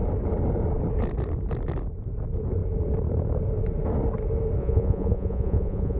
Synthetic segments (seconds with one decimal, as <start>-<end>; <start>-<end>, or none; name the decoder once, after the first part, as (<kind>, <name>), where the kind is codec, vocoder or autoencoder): 4.6-6.0 (vocoder, Vocos)